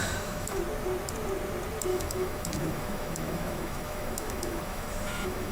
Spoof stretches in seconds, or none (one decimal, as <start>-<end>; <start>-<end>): 0.0-0.6; 1.9-5.5